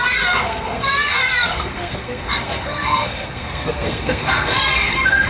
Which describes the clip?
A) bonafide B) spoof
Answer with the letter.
B